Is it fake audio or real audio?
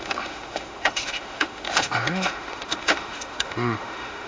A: fake